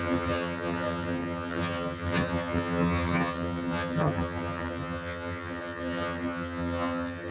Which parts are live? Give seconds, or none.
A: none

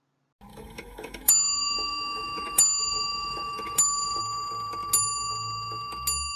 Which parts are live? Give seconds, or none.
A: 0.0-0.5; 4.2-6.4

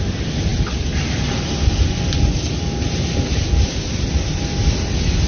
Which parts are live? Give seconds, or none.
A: 0.0-5.3

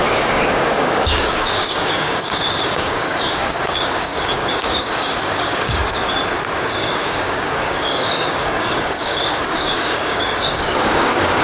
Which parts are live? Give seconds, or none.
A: 5.8-6.5